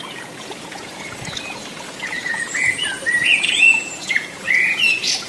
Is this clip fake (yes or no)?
yes